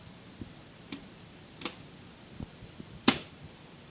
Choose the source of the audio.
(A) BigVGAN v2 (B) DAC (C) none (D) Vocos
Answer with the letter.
A